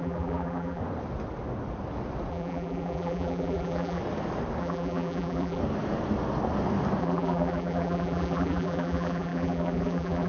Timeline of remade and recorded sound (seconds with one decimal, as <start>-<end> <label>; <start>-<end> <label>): 0.0-0.8 remade; 0.8-2.3 recorded; 2.3-4.0 remade; 4.0-4.6 recorded; 4.6-5.6 remade; 5.6-7.0 recorded; 7.0-10.3 remade